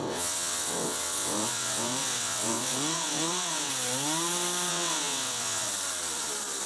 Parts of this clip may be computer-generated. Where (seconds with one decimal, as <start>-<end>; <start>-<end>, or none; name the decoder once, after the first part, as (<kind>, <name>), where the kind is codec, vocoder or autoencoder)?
0.0-3.7 (vocoder, WaveNeXt); 4.7-5.7